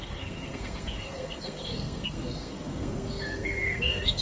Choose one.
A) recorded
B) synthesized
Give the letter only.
B